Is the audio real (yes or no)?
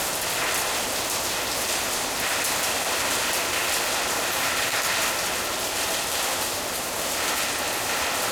yes